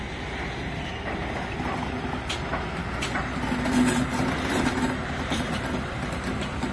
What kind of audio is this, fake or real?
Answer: real